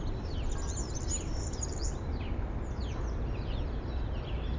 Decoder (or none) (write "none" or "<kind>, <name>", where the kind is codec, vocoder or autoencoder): none